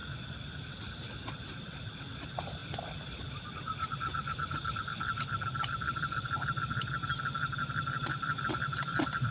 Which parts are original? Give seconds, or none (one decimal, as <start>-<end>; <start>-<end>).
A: 0.0-9.3